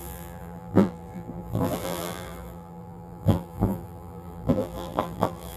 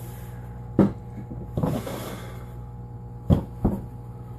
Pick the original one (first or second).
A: second